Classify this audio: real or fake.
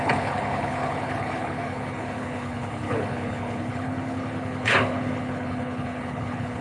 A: fake